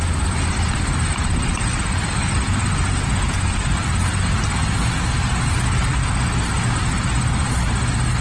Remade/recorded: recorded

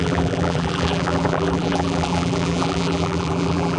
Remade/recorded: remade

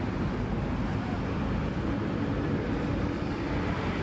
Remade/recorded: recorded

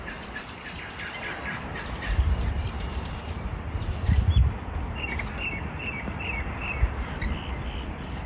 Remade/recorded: remade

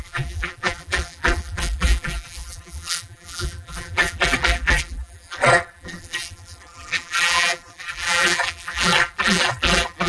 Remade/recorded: remade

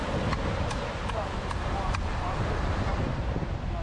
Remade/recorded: remade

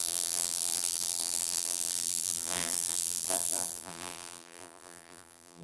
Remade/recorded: remade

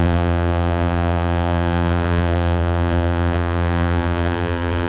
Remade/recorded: remade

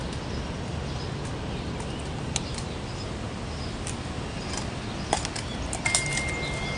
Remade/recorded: recorded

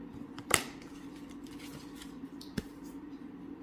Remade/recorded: remade